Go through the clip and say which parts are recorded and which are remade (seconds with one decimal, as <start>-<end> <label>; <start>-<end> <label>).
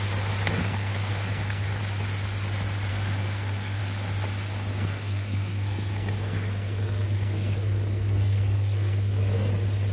0.0-0.6 recorded; 0.6-1.8 remade; 1.8-2.9 recorded; 2.9-3.8 remade; 3.8-4.7 recorded; 4.7-9.5 remade; 9.5-9.9 recorded